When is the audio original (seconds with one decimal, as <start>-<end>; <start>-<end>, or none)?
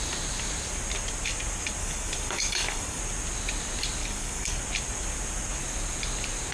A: 0.0-1.8; 3.0-4.0; 4.6-6.5